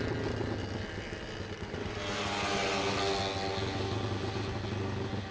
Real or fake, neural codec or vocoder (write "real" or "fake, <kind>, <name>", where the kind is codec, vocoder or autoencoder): real